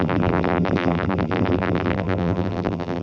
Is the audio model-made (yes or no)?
yes